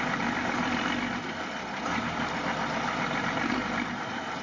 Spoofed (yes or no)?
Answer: yes